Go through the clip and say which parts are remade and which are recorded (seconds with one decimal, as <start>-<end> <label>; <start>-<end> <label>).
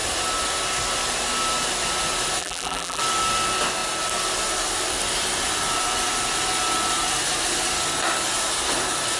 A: 0.0-2.4 recorded; 2.4-3.0 remade; 3.0-9.2 recorded